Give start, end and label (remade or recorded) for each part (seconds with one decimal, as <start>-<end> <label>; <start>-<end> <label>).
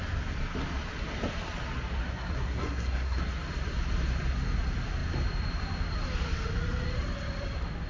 0.0-2.0 recorded; 2.0-3.2 remade; 3.2-7.9 recorded